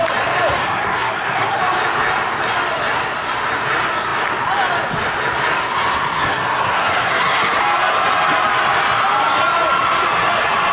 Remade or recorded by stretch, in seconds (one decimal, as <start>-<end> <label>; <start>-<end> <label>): 0.0-0.6 recorded; 0.6-1.6 remade; 1.6-6.2 recorded; 6.2-7.6 remade; 7.6-10.7 recorded